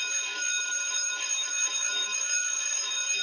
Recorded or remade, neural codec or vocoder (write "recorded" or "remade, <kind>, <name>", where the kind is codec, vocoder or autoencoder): remade, autoencoder, DAC-VAE